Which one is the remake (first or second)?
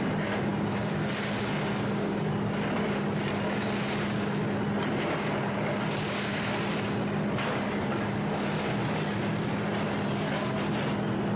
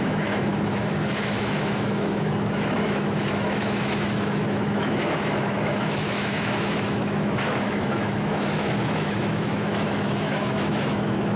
second